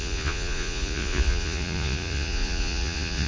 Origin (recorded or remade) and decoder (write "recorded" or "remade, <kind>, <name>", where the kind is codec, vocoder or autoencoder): remade, vocoder, Vocos